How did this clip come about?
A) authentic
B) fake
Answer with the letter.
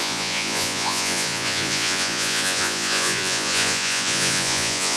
B